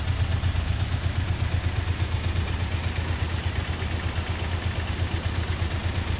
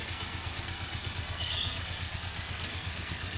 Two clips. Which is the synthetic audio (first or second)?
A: second